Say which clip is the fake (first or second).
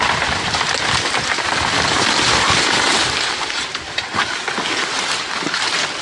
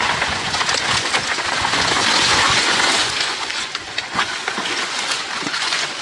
second